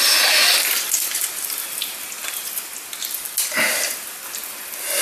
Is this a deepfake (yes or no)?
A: no